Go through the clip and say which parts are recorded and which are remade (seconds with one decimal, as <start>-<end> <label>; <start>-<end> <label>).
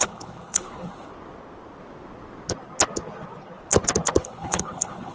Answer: 0.0-1.1 remade; 1.1-4.2 recorded; 4.2-5.1 remade